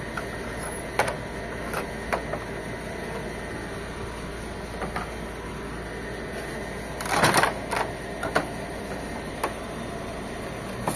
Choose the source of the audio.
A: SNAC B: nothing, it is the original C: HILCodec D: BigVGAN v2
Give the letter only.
B